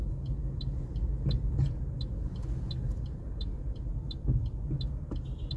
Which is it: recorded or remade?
recorded